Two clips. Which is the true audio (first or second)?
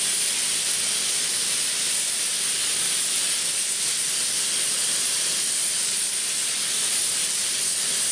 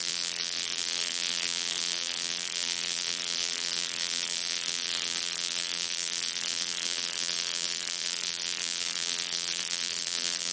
first